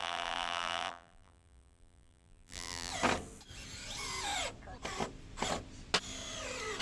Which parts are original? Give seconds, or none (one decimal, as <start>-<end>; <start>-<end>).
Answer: 2.9-6.8